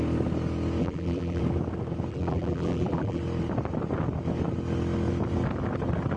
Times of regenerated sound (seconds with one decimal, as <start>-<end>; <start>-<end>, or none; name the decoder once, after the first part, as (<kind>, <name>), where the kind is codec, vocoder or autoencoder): 0.8-1.4 (vocoder, BigVGAN v2); 2.1-3.2